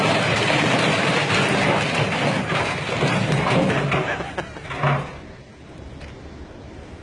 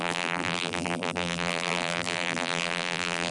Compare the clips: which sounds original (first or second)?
first